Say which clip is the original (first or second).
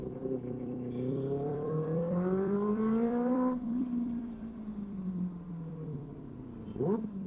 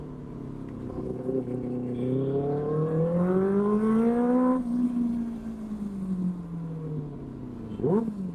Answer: second